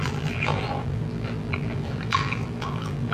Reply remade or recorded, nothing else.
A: remade